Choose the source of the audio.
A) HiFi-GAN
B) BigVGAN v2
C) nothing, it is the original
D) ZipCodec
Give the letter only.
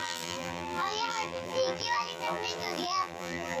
B